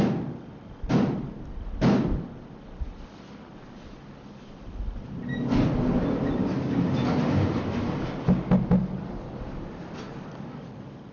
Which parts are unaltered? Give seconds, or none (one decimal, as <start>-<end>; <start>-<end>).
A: 0.0-11.1